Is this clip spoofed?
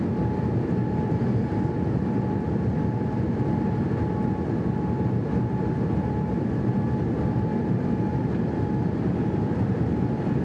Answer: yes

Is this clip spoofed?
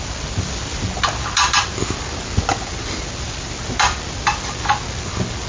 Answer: no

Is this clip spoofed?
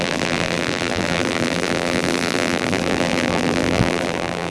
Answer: yes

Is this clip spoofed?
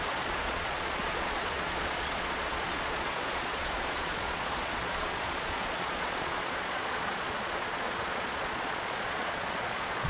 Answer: yes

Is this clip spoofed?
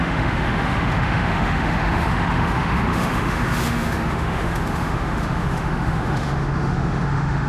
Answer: yes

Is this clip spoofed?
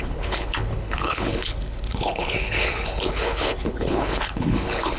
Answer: yes